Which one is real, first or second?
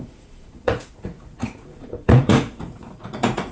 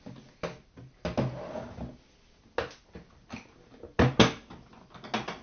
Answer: second